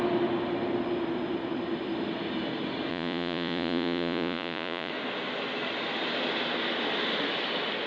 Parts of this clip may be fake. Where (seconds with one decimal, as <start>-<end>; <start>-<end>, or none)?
2.9-4.9